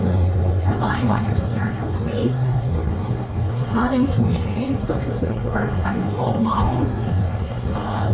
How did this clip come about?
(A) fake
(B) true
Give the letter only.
A